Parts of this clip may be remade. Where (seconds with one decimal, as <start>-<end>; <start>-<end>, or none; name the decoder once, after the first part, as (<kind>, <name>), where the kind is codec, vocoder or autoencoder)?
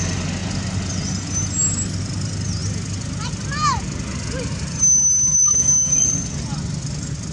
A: none